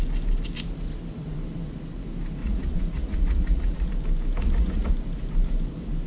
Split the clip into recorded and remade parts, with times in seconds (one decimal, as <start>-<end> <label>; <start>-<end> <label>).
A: 0.0-2.4 recorded; 2.4-3.9 remade; 3.9-4.4 recorded; 4.4-4.9 remade; 4.9-6.1 recorded